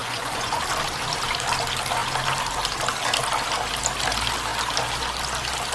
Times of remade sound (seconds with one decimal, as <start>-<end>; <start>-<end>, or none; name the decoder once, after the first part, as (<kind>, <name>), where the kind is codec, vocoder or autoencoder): 0.0-0.6 (vocoder, Vocos)